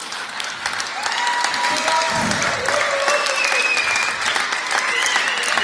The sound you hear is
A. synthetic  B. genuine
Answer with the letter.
B